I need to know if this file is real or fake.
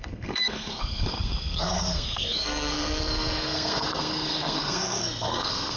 fake